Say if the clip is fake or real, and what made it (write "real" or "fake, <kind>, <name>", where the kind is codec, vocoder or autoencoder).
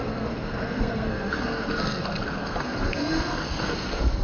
fake, codec, SNAC